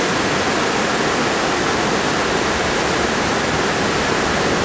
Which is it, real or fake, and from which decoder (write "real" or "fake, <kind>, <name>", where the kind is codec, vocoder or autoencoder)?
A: real